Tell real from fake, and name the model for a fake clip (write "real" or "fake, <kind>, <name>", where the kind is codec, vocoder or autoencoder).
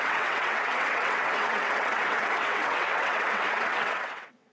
fake, vocoder, WaveNeXt